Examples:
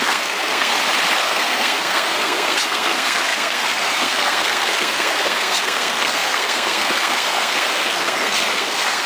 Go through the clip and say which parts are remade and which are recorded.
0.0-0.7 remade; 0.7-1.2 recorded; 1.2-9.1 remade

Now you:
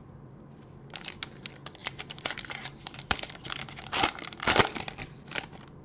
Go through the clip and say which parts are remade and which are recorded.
0.0-1.8 recorded; 1.8-4.1 remade; 4.1-5.8 recorded

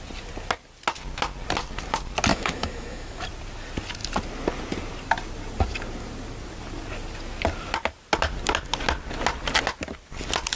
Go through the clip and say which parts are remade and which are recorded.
0.0-2.3 recorded; 2.3-3.2 remade; 3.2-10.6 recorded

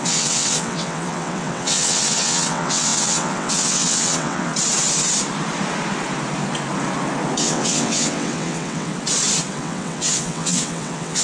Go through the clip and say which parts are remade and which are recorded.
0.0-4.5 remade; 4.5-7.4 recorded; 7.4-8.9 remade; 8.9-9.5 recorded; 9.5-11.2 remade

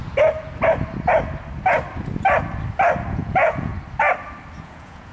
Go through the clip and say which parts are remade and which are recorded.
0.0-3.1 recorded; 3.1-3.7 remade; 3.7-4.6 recorded; 4.6-5.1 remade

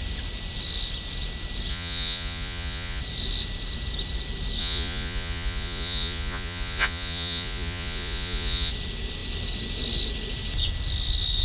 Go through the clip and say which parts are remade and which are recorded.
0.0-1.7 recorded; 1.7-3.0 remade; 3.0-4.6 recorded; 4.6-8.7 remade; 8.7-11.4 recorded

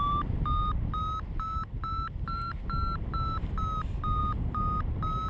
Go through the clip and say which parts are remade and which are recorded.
0.0-5.3 recorded

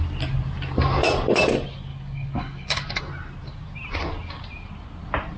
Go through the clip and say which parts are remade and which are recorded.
0.0-1.9 recorded; 1.9-3.0 remade; 3.0-5.4 recorded